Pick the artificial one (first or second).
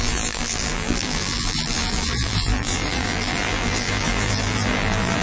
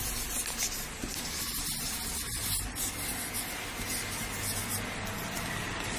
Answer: first